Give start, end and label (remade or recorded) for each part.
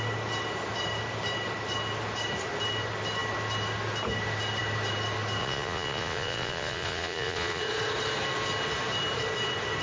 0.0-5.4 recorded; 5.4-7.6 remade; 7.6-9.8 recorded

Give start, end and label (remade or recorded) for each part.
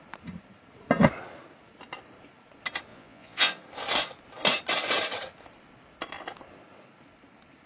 0.0-2.9 recorded; 2.9-3.6 remade; 3.6-7.7 recorded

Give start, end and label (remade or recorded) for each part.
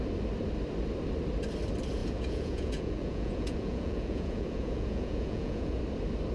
0.0-2.0 recorded; 2.0-5.8 remade; 5.8-6.3 recorded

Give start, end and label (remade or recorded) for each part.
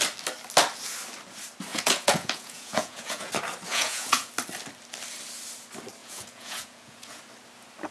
0.0-1.7 recorded; 1.7-3.3 remade; 3.3-3.7 recorded; 3.7-4.3 remade; 4.3-6.0 recorded; 6.0-7.2 remade; 7.2-7.9 recorded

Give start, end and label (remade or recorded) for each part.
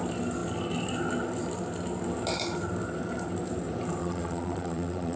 0.0-4.0 recorded; 4.0-5.2 remade